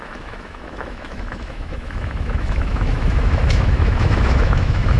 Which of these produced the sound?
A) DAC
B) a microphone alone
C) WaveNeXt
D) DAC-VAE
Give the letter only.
D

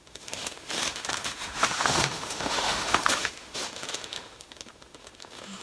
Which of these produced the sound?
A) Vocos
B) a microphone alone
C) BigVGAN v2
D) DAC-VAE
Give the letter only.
D